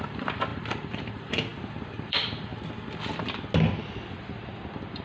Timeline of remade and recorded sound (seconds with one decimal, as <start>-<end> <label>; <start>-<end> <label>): 0.0-2.5 remade; 2.5-4.6 recorded; 4.6-5.0 remade